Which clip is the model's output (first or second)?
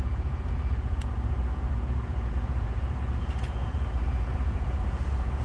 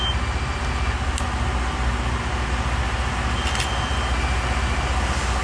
first